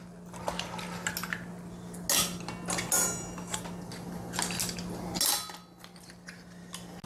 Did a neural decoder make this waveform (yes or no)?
no